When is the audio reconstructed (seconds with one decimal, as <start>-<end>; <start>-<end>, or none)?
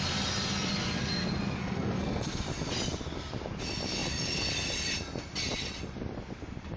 1.6-2.4